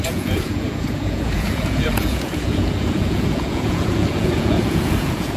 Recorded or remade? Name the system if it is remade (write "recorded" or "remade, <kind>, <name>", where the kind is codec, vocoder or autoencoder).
remade, vocoder, Vocos